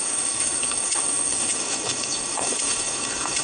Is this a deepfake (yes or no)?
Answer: yes